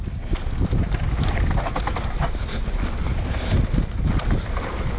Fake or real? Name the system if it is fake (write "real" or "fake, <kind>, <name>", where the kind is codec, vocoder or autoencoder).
real